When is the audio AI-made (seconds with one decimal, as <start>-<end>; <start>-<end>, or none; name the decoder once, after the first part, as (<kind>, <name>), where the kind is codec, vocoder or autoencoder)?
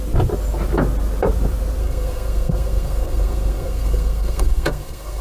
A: 1.8-5.2 (codec, SNAC)